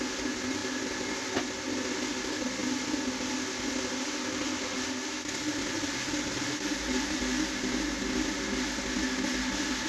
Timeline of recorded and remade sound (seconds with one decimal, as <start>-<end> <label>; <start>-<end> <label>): 0.0-9.9 recorded